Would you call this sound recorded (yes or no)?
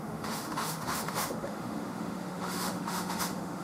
no